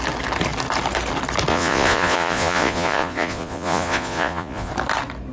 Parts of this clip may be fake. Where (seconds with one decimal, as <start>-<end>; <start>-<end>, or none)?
1.5-4.7